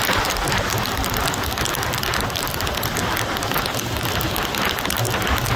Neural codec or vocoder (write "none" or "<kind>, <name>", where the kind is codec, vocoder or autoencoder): none